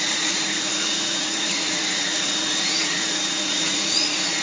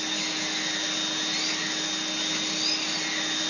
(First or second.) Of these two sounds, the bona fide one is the second